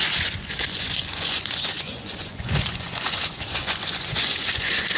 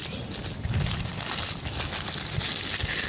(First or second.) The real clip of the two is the second